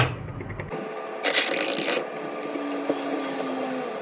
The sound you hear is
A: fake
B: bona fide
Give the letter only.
B